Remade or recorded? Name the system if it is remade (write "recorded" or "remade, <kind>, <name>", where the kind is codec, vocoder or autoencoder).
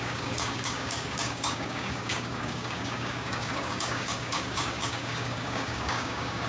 remade, codec, DAC